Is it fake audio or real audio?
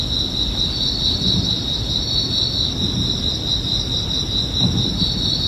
real